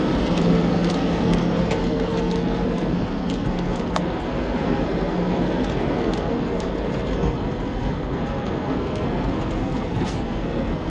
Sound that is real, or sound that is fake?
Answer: fake